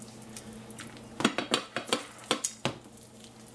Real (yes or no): yes